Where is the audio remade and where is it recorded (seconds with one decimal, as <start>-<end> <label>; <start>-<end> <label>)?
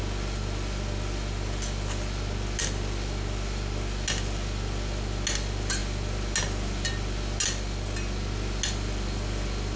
0.0-9.8 recorded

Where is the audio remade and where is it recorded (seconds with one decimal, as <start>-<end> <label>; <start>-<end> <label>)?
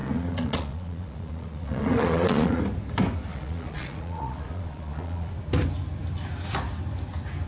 0.0-2.6 remade; 2.6-3.3 recorded; 3.3-5.3 remade; 5.3-7.5 recorded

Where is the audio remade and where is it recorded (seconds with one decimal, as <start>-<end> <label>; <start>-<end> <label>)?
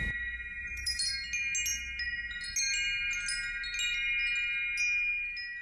0.0-0.6 recorded; 0.6-1.1 remade; 1.1-5.6 recorded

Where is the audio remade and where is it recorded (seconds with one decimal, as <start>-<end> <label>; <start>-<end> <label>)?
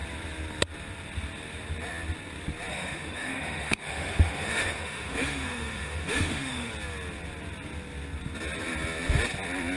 0.0-2.7 recorded; 2.7-6.7 remade; 6.7-9.8 recorded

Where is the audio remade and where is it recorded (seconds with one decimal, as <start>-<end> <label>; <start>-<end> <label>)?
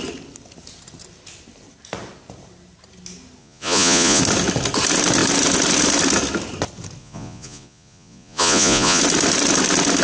0.0-3.4 recorded; 3.4-4.2 remade; 4.2-7.0 recorded; 7.0-9.0 remade; 9.0-10.0 recorded